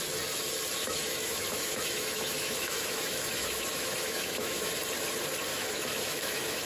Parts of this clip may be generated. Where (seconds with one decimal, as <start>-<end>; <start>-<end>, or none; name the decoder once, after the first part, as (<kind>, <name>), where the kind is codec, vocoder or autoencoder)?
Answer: 0.8-4.8 (autoencoder, DAC-VAE); 5.5-6.6